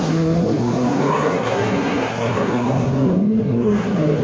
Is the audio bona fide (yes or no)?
no